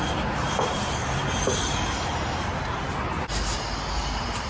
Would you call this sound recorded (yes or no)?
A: yes